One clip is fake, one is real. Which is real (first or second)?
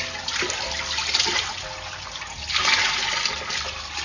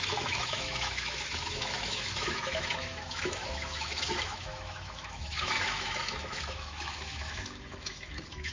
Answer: first